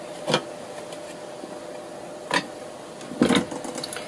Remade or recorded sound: recorded